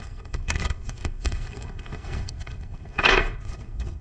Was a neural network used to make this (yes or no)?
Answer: yes